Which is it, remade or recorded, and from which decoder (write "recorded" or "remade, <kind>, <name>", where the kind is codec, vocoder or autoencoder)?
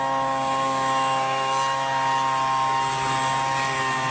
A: recorded